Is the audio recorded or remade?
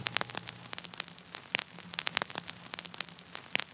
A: recorded